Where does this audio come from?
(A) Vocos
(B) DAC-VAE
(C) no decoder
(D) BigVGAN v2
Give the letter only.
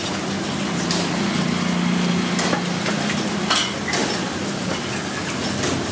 C